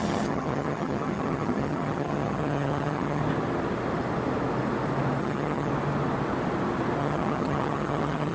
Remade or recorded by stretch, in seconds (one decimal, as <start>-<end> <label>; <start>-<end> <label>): 0.0-3.2 remade; 3.2-5.2 recorded; 5.2-5.7 remade; 5.7-7.0 recorded; 7.0-8.3 remade